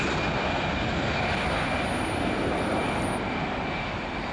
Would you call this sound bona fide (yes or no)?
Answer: yes